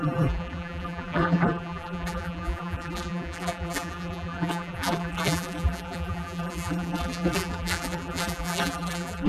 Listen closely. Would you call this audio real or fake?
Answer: fake